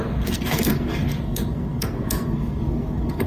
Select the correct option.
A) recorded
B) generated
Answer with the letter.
B